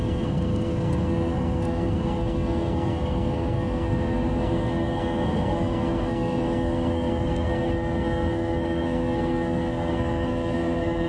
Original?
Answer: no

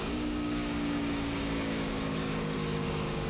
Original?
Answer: no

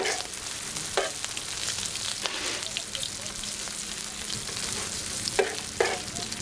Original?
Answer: yes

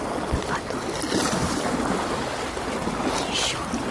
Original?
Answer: yes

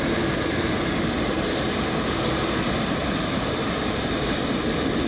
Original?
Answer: yes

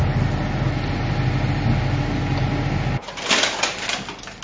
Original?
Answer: yes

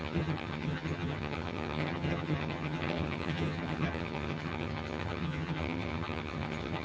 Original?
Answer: no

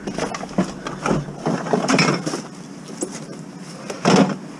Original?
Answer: yes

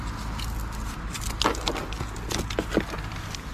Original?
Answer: yes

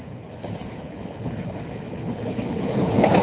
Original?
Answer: no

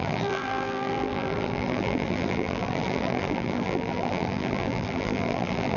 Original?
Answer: no